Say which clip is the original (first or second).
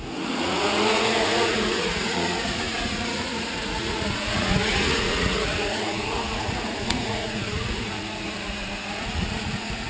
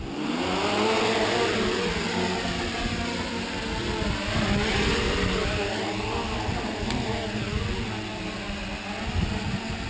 second